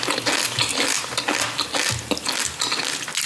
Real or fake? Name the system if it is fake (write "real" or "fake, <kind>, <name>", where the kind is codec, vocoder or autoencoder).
real